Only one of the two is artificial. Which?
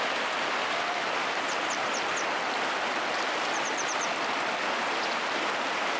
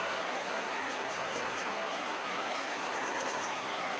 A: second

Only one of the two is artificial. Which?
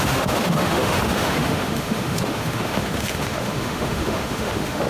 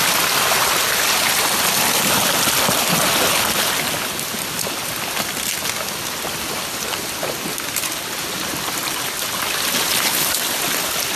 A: first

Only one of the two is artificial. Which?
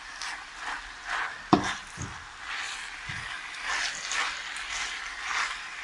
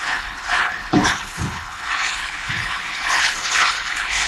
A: second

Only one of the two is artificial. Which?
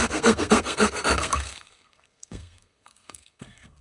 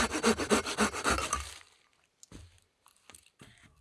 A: first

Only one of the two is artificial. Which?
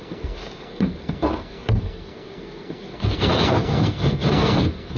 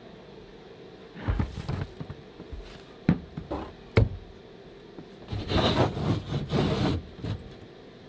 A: first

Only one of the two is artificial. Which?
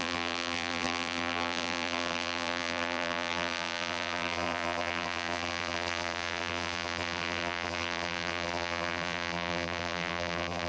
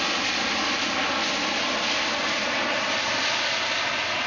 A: first